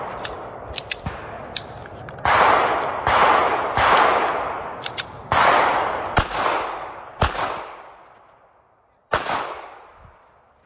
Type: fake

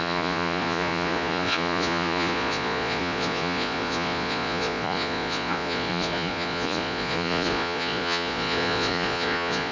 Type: fake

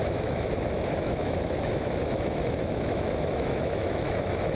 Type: fake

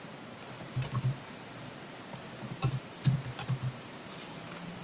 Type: fake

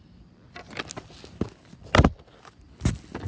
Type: real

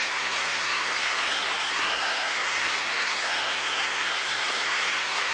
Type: fake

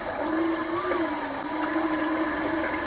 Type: real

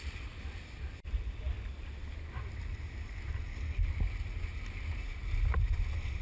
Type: real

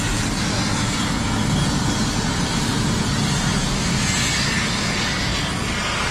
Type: real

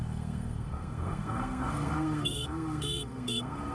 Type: fake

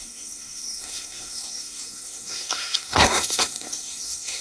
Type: fake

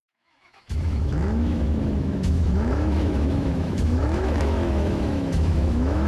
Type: fake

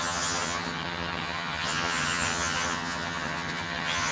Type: fake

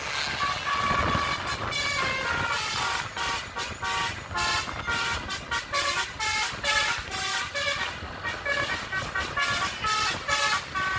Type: real